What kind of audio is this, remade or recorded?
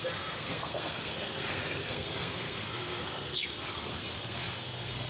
remade